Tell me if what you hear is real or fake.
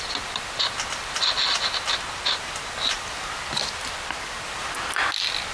real